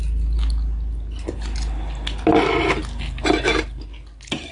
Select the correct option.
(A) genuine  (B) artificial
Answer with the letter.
A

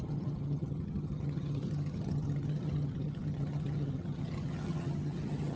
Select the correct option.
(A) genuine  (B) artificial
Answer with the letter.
B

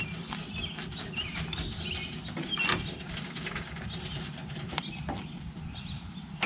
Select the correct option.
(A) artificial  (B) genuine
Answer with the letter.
B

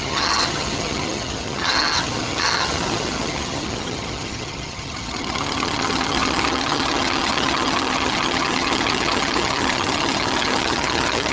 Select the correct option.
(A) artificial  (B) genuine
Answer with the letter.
A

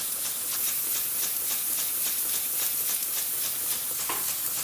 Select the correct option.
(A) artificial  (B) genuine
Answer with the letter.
B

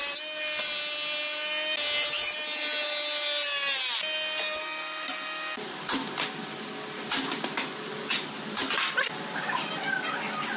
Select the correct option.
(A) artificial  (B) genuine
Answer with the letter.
B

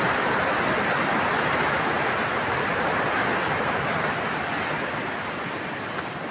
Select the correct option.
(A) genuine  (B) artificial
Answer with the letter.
A